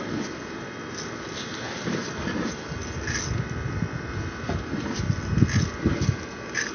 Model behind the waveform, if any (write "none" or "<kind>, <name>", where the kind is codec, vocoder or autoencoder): none